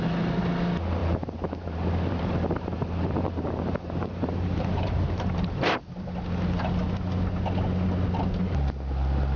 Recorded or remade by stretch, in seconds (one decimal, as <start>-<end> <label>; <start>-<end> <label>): 0.0-1.0 recorded; 1.0-5.8 remade; 5.8-9.4 recorded